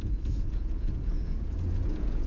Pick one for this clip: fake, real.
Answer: fake